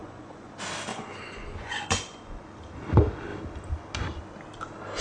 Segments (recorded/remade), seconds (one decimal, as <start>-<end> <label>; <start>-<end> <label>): 0.0-0.5 remade; 0.5-0.9 recorded; 0.9-2.4 remade; 2.4-5.0 recorded